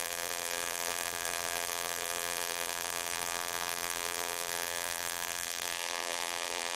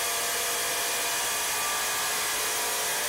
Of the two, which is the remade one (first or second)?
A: first